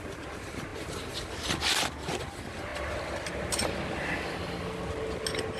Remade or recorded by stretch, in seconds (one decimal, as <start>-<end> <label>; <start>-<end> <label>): 0.0-5.6 recorded